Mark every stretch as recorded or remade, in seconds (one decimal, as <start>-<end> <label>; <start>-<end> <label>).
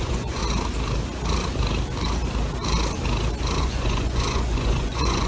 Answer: 0.0-0.4 remade; 0.4-3.6 recorded; 3.6-5.3 remade